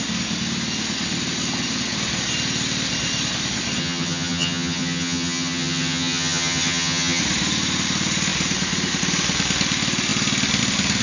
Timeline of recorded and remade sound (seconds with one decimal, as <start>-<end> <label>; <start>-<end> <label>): 0.0-3.8 recorded; 3.8-7.2 remade; 7.2-11.0 recorded